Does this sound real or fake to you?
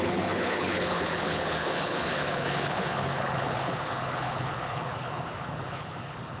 fake